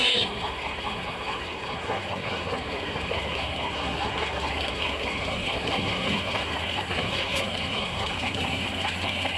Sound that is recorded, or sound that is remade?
remade